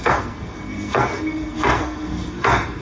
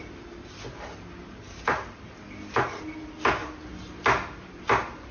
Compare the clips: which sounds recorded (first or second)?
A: second